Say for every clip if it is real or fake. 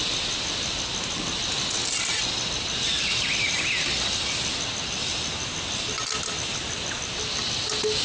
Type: real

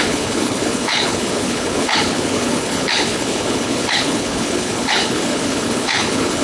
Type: fake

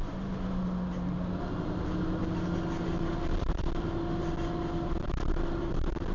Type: real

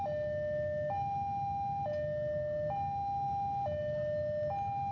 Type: real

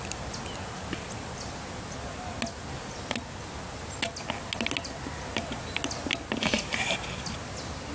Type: real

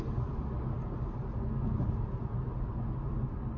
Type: real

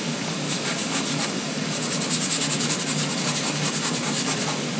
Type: fake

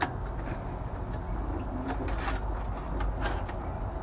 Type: real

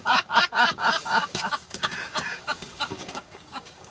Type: fake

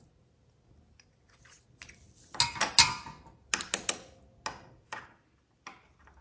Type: real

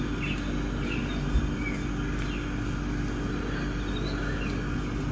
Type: real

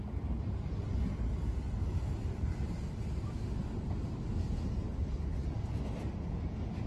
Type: real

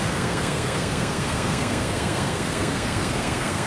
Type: fake